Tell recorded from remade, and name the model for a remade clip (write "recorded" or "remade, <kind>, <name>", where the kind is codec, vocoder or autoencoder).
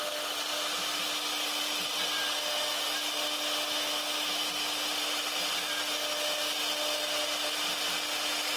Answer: recorded